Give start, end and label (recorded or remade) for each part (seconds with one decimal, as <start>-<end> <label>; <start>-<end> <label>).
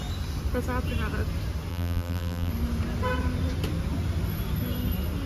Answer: 0.0-1.7 recorded; 1.7-2.5 remade; 2.5-5.3 recorded